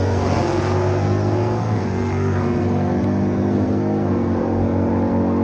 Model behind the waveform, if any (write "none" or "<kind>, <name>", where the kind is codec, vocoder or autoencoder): codec, SNAC